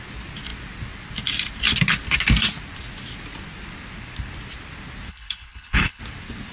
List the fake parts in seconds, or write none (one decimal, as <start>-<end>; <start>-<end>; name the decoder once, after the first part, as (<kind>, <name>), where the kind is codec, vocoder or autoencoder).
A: 5.1-6.0 (codec, HILCodec)